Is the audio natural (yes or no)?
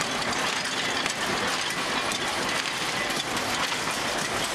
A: yes